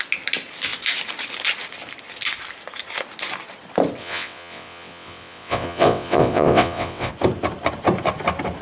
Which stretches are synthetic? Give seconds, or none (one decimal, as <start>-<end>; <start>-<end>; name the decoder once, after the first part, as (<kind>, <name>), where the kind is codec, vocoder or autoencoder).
4.0-7.1 (vocoder, WaveNeXt)